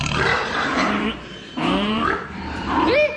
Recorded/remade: remade